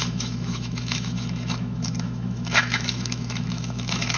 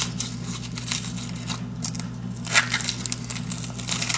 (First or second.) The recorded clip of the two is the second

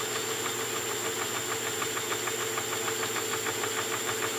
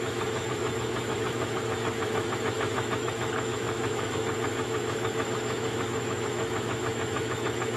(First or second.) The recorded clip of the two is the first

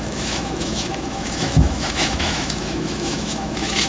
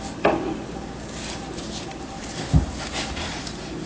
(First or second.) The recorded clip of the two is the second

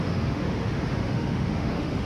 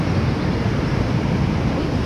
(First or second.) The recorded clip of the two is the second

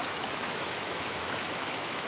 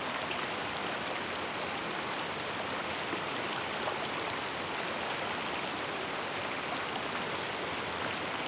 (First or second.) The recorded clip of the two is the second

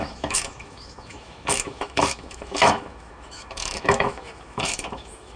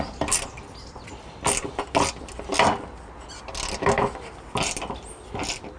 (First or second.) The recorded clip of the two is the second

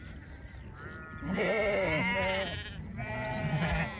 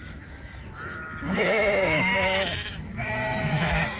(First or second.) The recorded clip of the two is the first